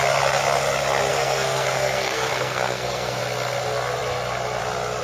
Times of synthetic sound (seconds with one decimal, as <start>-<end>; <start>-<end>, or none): 1.1-3.2